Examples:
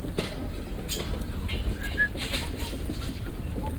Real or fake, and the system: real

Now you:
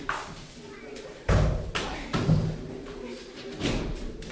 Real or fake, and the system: real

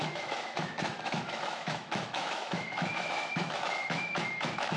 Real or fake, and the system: fake, autoencoder, DAC-VAE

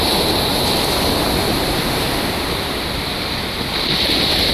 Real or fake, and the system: real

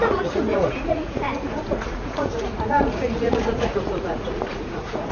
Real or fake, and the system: fake, vocoder, Vocos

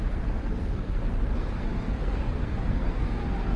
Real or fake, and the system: fake, codec, SNAC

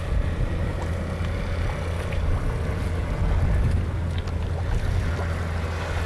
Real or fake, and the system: real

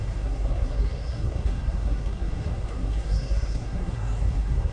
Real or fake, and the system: fake, codec, SNAC